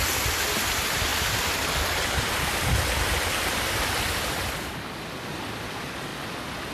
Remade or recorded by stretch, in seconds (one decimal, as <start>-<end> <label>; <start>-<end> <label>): 0.0-1.1 recorded; 1.1-2.3 remade; 2.3-6.7 recorded